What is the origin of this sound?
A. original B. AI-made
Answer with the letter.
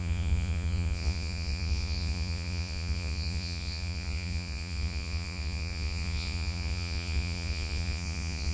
B